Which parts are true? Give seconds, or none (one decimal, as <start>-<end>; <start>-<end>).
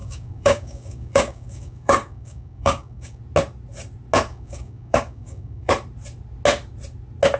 3.2-4.3; 5.7-7.4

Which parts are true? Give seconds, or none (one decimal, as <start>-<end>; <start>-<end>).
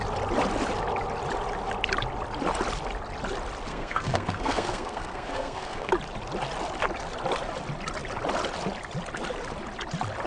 0.0-3.7; 5.9-10.3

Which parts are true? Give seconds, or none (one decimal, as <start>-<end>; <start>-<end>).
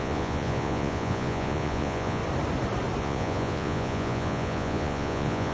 2.2-3.0